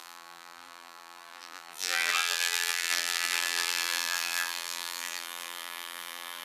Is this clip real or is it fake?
fake